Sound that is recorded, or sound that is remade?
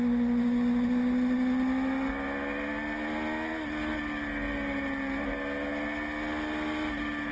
recorded